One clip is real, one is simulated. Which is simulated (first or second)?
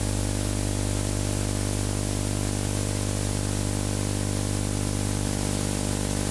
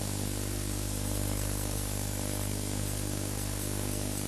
second